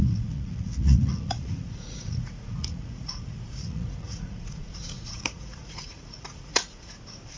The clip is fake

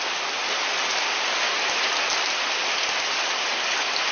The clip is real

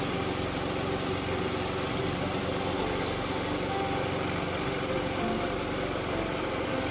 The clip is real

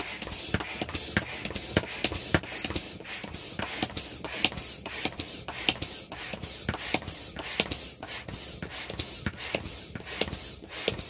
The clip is real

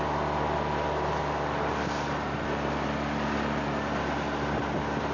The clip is real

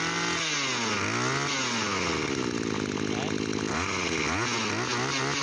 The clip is real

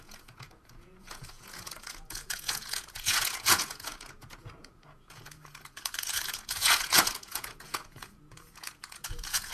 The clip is fake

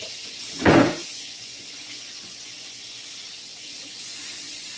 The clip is fake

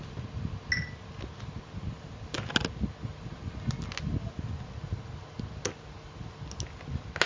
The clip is real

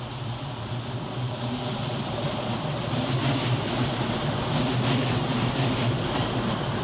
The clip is real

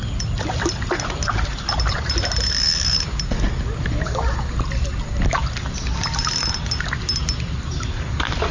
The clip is real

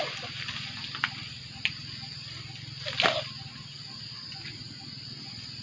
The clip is real